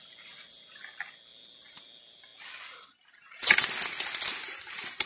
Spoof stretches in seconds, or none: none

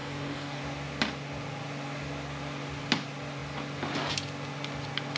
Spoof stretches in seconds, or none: 0.0-0.6

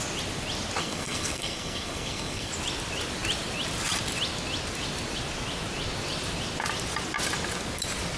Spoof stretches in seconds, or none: 0.8-2.5

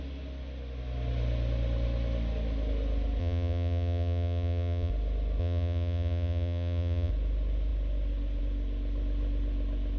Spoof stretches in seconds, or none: 3.2-4.9; 5.4-7.1

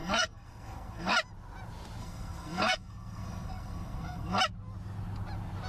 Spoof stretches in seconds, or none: 0.0-1.1; 2.0-4.4

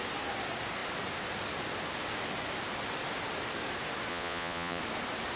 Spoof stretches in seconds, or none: 4.1-4.8

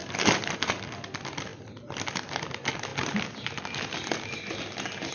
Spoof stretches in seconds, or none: 0.0-0.7; 1.5-2.1; 2.9-3.6